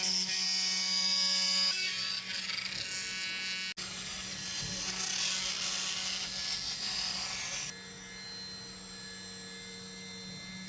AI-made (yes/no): no